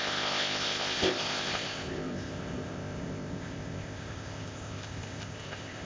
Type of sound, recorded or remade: remade